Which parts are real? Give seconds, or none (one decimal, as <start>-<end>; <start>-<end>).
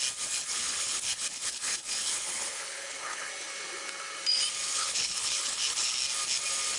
0.0-0.4; 3.3-4.7; 6.0-6.8